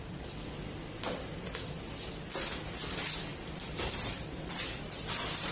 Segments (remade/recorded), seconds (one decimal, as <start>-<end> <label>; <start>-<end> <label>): 0.0-3.3 recorded; 3.3-3.9 remade; 3.9-5.5 recorded